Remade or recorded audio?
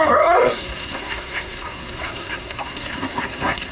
remade